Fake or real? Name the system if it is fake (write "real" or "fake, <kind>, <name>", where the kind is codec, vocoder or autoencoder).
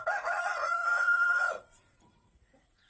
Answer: fake, vocoder, Vocos